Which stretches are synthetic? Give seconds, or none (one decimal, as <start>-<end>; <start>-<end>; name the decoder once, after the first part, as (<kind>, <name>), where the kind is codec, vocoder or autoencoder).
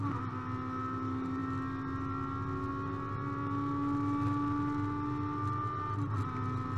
none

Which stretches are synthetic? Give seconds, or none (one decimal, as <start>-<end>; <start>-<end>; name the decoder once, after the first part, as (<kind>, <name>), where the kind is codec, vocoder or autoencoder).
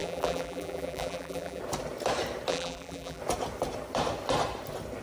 0.0-1.6 (vocoder, BigVGAN v2); 2.5-3.2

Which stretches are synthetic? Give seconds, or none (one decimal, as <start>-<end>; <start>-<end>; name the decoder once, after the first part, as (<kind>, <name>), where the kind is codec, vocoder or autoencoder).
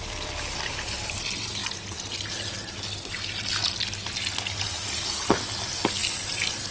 0.0-1.6 (vocoder, BigVGAN v2); 5.6-6.0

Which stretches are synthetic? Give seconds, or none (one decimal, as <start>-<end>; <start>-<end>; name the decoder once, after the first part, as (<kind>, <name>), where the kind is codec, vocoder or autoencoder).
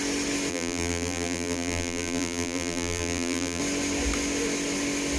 0.5-3.6 (vocoder, BigVGAN v2)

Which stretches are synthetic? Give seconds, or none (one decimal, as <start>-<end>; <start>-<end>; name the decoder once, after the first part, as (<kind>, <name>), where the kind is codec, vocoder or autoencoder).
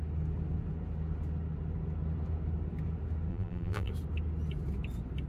3.3-3.9 (vocoder, BigVGAN v2)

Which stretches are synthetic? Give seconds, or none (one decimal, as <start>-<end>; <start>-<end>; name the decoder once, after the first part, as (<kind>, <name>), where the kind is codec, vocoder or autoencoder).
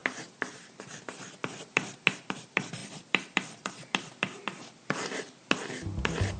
2.8-3.7 (vocoder, BigVGAN v2)